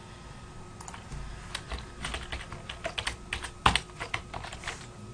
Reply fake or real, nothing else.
real